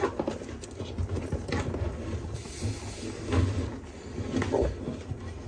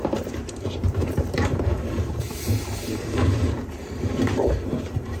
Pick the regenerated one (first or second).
second